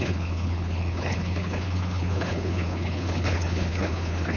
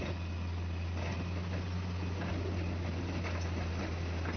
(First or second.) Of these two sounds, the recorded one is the second